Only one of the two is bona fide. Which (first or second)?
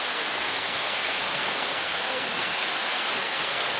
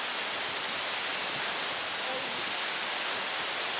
second